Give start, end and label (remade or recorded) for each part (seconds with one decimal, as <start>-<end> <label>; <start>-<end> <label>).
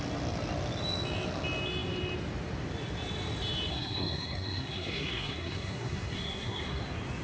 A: 0.0-3.7 recorded; 3.7-6.8 remade; 6.8-7.2 recorded